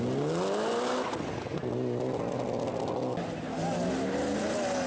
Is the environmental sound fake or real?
real